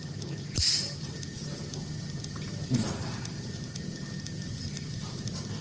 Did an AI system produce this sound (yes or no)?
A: yes